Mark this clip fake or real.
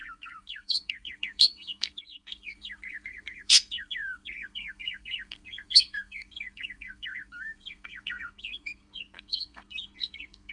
fake